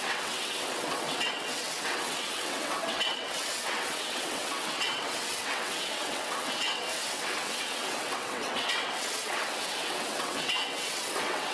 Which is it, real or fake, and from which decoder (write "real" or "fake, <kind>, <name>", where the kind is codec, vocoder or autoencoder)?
fake, vocoder, WaveNeXt